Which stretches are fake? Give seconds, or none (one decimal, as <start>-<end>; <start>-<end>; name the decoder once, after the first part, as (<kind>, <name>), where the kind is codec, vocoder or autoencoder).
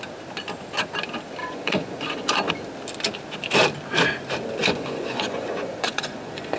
1.4-2.5 (vocoder, Vocos); 4.6-6.6